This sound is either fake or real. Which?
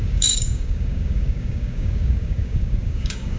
fake